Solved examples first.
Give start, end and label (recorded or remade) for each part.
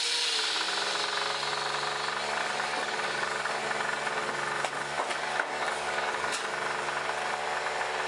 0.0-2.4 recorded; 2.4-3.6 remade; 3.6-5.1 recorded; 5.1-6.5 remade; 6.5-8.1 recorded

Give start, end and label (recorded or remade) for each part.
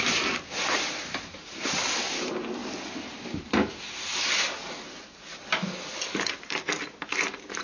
0.0-7.6 recorded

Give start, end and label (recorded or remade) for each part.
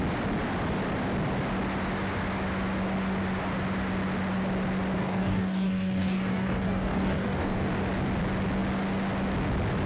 0.0-5.0 recorded; 5.0-7.8 remade; 7.8-9.9 recorded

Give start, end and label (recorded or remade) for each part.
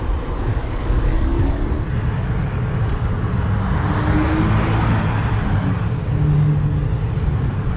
0.0-0.5 recorded; 0.5-1.7 remade; 1.7-7.8 recorded